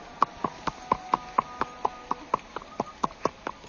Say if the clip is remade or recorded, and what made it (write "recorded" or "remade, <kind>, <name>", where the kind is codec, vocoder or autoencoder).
recorded